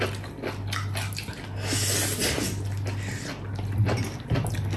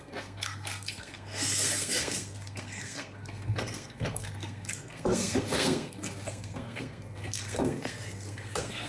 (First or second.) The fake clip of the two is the second